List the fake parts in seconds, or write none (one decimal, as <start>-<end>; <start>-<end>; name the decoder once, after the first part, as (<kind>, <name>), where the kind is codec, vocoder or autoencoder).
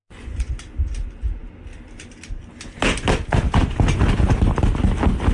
0.0-0.5 (vocoder, Vocos)